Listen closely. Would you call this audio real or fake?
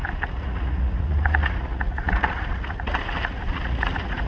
fake